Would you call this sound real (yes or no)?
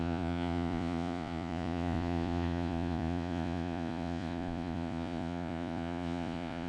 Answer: no